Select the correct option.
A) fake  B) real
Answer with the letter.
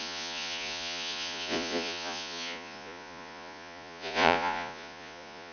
A